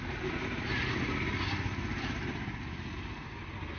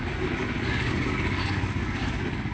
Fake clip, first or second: second